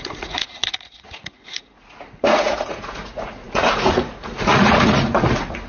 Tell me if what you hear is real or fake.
fake